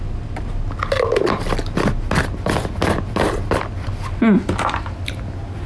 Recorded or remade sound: recorded